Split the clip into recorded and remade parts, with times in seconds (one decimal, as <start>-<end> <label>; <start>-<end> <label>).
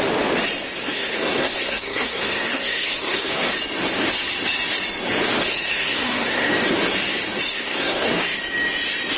0.0-0.8 recorded; 0.8-3.5 remade; 3.5-5.4 recorded; 5.4-6.5 remade; 6.5-7.5 recorded; 7.5-8.2 remade; 8.2-9.2 recorded